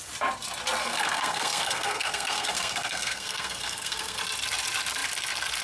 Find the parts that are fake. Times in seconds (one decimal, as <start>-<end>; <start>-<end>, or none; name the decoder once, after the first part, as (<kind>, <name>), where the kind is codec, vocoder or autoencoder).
0.8-4.2 (codec, SNAC)